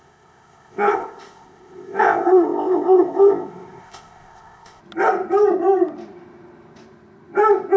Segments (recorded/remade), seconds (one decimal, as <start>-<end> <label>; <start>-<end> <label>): 0.0-4.8 remade; 4.8-7.8 recorded